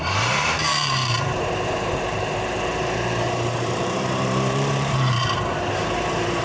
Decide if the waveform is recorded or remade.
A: remade